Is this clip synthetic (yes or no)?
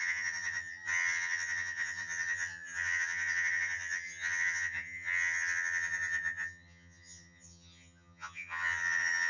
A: yes